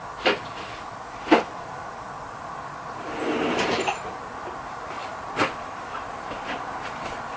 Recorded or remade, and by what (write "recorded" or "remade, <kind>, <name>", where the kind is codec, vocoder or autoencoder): remade, vocoder, BigVGAN v2